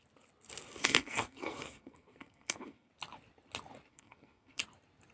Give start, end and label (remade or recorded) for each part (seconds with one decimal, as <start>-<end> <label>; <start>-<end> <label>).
0.0-0.8 recorded; 0.8-2.9 remade; 2.9-3.9 recorded; 3.9-4.6 remade; 4.6-5.1 recorded